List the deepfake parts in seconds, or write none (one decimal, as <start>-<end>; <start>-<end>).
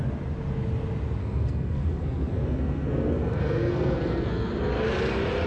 1.2-4.5